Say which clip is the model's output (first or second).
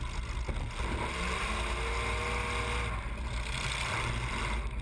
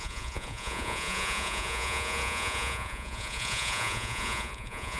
second